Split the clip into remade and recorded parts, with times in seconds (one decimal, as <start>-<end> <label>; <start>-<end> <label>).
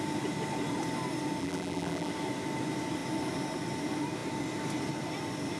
0.0-1.4 recorded; 1.4-2.1 remade; 2.1-5.6 recorded